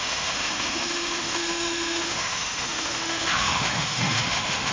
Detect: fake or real fake